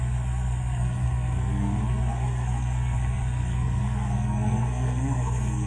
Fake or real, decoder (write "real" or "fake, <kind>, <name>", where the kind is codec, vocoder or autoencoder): fake, codec, SNAC